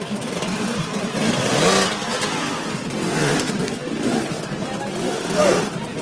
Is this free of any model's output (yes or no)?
no